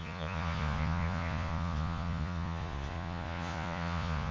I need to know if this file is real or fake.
fake